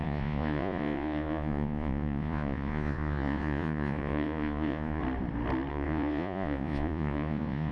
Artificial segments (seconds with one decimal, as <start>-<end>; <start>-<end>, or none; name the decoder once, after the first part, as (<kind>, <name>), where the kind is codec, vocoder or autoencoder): 0.0-5.0 (vocoder, Vocos); 5.7-7.7